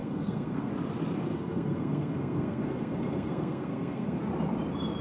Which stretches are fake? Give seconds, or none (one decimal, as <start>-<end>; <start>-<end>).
0.0-0.7; 1.3-4.2